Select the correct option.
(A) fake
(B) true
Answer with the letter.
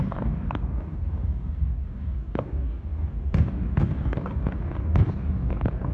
A